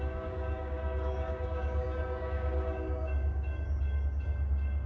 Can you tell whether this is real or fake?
fake